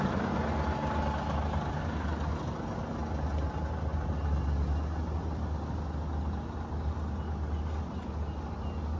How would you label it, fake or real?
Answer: real